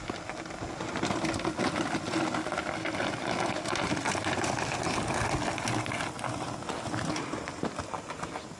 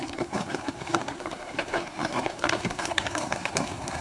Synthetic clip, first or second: second